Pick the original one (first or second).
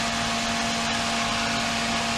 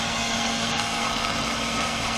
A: first